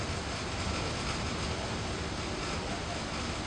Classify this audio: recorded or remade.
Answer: recorded